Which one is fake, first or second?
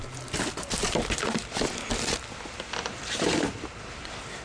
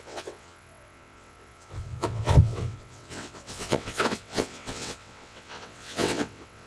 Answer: second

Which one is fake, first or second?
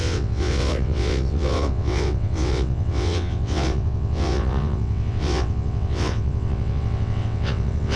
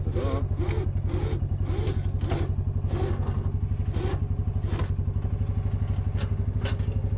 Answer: first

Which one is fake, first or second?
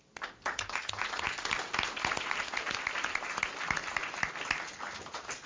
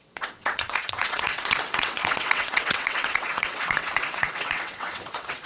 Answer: second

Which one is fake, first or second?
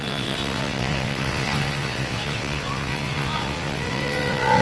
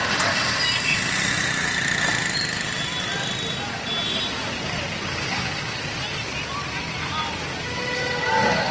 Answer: first